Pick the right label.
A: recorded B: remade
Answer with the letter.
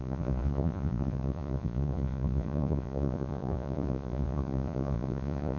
B